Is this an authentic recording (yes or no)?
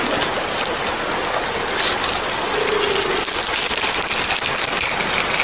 yes